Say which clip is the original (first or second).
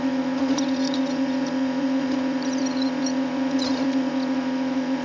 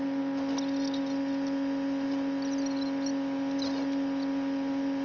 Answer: second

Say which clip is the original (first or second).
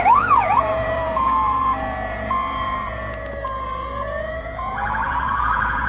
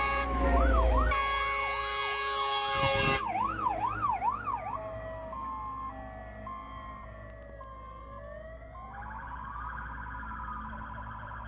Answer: second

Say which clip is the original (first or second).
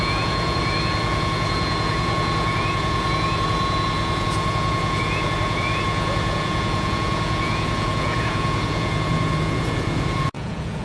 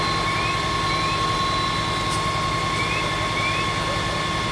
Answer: second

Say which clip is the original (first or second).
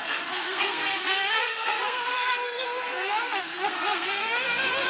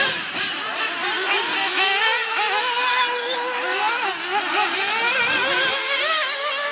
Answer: second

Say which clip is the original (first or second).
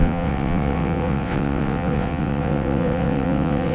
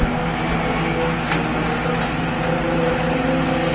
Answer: second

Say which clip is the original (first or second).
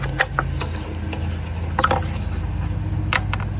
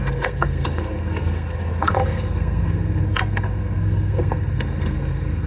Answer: first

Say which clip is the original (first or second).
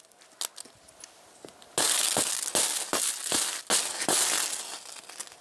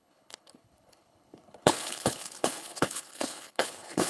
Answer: first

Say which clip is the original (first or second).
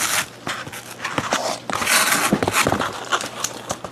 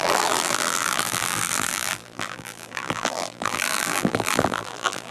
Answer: first